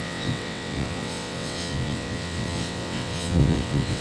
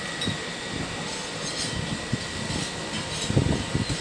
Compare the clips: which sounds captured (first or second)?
second